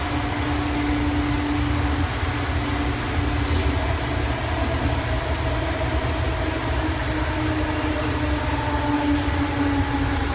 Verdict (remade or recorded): recorded